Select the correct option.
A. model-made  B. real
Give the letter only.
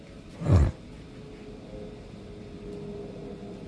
B